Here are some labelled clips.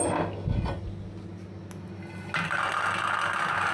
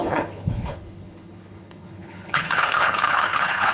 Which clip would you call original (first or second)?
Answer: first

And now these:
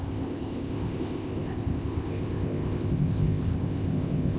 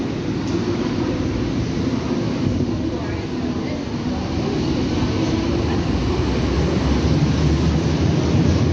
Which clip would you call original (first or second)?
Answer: second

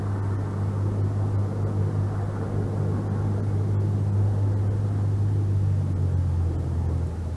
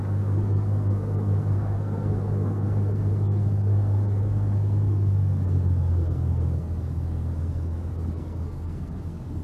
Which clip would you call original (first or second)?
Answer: first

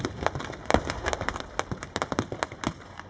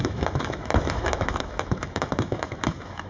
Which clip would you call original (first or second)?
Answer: first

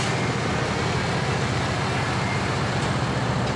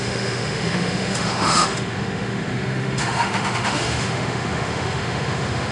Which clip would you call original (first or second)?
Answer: first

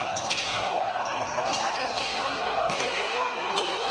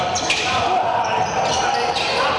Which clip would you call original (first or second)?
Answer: second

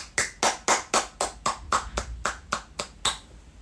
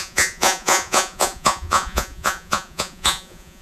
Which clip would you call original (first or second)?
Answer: first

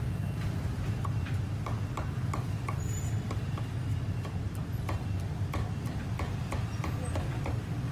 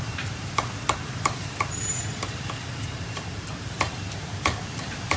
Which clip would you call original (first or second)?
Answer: first